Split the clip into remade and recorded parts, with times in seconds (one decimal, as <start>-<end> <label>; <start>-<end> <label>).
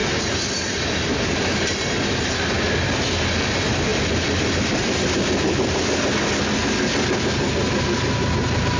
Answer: 0.0-8.8 recorded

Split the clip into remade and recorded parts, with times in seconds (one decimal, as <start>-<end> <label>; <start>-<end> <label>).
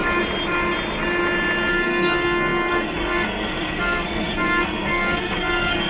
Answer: 0.0-1.7 recorded; 1.7-5.9 remade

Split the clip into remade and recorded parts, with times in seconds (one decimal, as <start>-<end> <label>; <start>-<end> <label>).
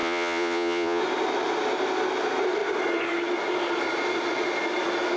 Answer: 0.0-1.0 remade; 1.0-5.2 recorded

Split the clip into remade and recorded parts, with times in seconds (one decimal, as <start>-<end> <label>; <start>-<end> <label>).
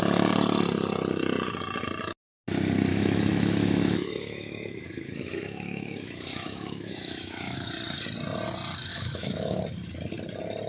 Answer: 0.0-2.9 recorded; 2.9-7.7 remade; 7.7-8.9 recorded; 8.9-9.6 remade; 9.6-10.7 recorded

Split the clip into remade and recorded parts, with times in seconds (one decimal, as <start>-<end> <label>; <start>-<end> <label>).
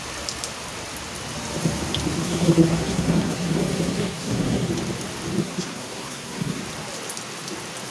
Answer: 0.0-2.2 recorded; 2.2-4.7 remade; 4.7-5.4 recorded; 5.4-6.6 remade; 6.6-7.9 recorded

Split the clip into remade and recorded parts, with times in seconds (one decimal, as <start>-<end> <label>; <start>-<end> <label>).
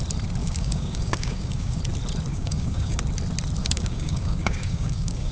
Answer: 0.0-0.4 recorded; 0.4-1.8 remade; 1.8-2.3 recorded; 2.3-3.0 remade; 3.0-3.6 recorded; 3.6-5.3 remade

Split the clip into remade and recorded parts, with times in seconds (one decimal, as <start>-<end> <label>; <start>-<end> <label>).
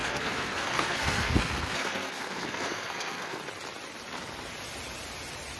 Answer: 0.0-3.4 remade; 3.4-5.6 recorded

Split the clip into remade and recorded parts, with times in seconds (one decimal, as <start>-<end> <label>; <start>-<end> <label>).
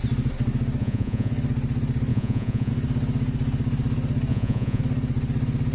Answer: 0.0-0.8 recorded; 0.8-1.3 remade; 1.3-2.1 recorded; 2.1-2.7 remade; 2.7-4.3 recorded; 4.3-4.8 remade; 4.8-5.7 recorded